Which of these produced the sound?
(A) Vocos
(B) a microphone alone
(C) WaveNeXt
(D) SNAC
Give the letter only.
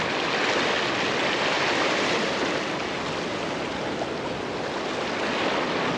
B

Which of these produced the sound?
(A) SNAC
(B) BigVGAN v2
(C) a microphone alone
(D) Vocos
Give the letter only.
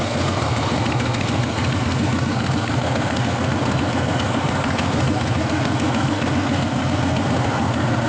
A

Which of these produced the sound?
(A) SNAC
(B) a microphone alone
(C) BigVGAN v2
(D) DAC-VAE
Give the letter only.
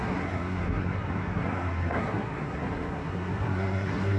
A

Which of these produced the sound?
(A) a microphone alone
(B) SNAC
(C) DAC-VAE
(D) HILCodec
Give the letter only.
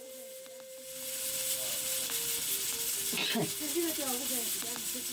A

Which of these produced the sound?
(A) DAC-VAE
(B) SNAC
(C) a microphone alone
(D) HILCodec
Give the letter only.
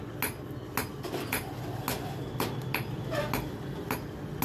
C